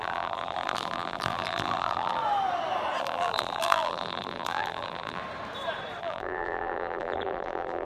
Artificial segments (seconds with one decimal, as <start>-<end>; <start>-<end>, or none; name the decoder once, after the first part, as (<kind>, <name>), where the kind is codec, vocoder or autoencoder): 0.0-2.2 (vocoder, BigVGAN v2); 3.0-5.2; 6.0-7.8